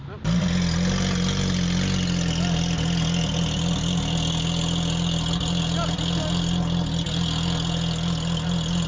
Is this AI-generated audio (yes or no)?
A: no